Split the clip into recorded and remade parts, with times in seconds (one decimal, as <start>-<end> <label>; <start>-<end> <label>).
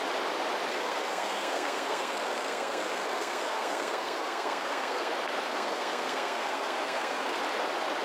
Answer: 0.0-0.7 recorded; 0.7-5.1 remade; 5.1-5.5 recorded; 5.5-7.4 remade; 7.4-8.0 recorded